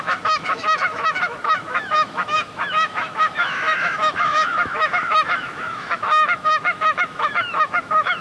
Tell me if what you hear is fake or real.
fake